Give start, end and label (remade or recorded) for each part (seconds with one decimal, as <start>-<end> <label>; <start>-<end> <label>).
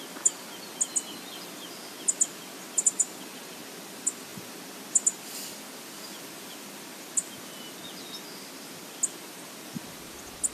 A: 0.0-10.5 recorded